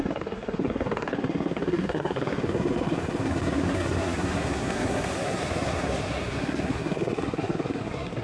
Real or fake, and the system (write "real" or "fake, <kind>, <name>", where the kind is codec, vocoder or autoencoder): fake, codec, SNAC